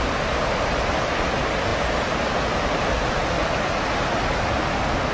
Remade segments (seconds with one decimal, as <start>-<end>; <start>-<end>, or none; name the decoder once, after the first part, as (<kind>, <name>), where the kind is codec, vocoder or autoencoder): none